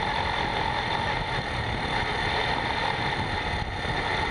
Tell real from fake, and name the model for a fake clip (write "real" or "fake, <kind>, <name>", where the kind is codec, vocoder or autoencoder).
real